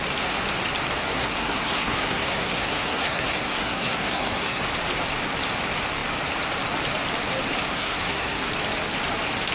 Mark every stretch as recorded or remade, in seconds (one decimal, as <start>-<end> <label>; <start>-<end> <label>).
0.0-1.0 recorded; 1.0-4.6 remade; 4.6-7.7 recorded; 7.7-8.5 remade; 8.5-9.5 recorded